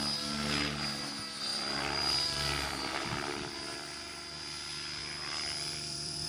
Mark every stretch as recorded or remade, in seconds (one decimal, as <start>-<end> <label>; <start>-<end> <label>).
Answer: 0.0-1.5 recorded; 1.5-2.8 remade; 2.8-5.0 recorded; 5.0-6.3 remade